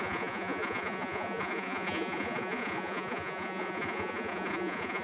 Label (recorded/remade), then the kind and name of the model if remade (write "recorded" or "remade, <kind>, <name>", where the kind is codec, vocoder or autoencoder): remade, vocoder, Vocos